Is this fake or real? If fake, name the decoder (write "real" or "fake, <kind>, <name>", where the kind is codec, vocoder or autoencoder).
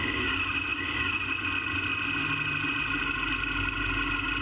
real